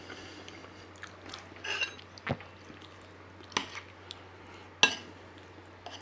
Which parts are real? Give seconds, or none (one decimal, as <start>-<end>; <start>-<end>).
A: 0.0-6.0